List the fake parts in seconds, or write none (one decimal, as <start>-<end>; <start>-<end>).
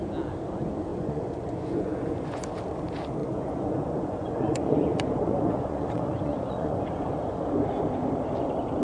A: 0.9-2.5; 3.2-7.4